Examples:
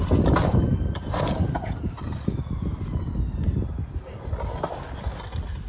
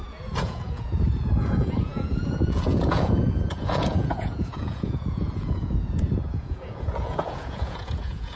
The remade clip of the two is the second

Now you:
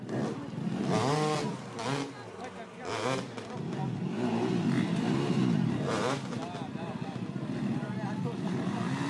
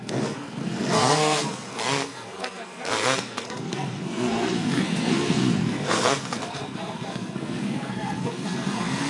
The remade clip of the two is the second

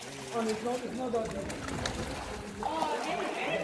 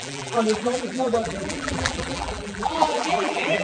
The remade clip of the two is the second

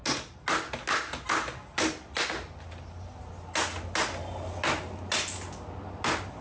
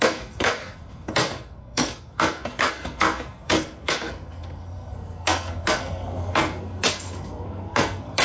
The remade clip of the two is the second